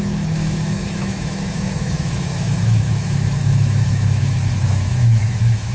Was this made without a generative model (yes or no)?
no